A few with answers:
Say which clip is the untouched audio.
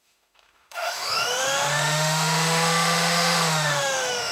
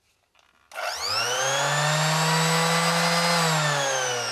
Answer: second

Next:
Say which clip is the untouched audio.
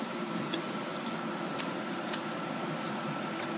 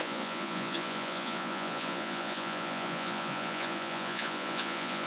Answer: first